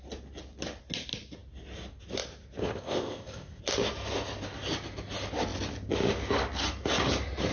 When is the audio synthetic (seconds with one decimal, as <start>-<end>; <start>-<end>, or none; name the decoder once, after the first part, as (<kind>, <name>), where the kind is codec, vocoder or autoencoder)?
2.6-3.6 (codec, ZipCodec)

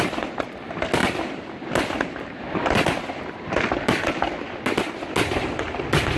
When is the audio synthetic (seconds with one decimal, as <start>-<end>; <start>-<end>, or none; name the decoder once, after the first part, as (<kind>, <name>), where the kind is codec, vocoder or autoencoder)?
none

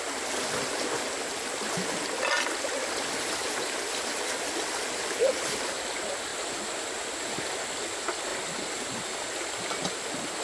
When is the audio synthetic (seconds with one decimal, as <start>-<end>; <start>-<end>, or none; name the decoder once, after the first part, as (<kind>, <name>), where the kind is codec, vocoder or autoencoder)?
8.3-9.6 (vocoder, BigVGAN v2)

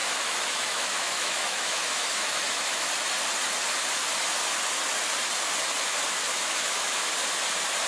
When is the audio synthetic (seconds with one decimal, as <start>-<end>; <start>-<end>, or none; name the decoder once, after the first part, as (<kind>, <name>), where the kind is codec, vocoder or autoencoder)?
0.0-2.9 (autoencoder, DAC-VAE); 6.3-7.1

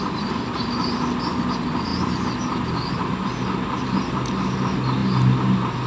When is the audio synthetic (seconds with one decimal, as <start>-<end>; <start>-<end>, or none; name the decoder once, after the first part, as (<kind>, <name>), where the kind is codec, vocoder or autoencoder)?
none

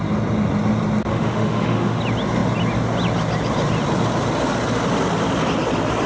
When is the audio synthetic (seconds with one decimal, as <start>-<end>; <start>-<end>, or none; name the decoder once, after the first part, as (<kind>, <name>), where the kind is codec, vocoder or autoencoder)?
1.1-2.0 (autoencoder, DAC-VAE)

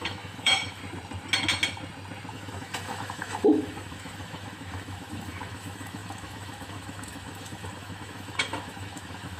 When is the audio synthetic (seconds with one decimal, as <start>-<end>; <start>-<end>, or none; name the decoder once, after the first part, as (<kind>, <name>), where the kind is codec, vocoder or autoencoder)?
0.0-0.8 (autoencoder, DAC-VAE); 2.3-9.4

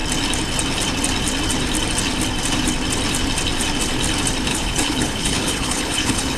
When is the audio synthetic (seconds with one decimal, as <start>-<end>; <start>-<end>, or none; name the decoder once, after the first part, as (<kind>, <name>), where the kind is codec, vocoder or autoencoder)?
4.5-6.4 (codec, HILCodec)